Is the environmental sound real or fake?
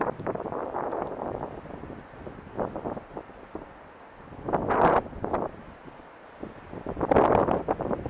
real